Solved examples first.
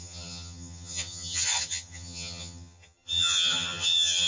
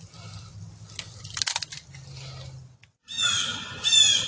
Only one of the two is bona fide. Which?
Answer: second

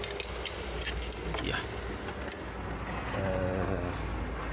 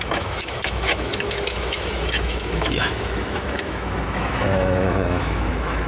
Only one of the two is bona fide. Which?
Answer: first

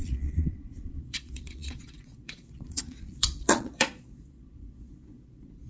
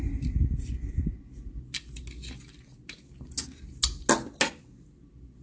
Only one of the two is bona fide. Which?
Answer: second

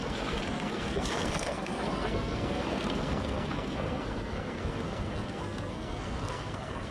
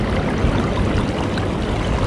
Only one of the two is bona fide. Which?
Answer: second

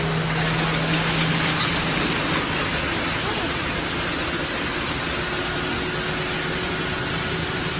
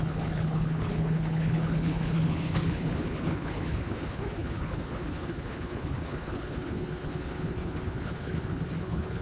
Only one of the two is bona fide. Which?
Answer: first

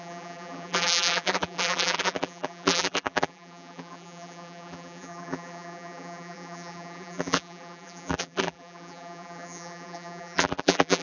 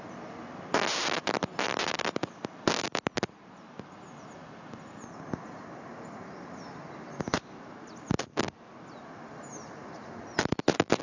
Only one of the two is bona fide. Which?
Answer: second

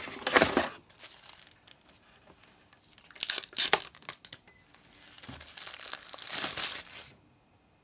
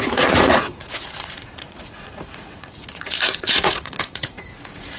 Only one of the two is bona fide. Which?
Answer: first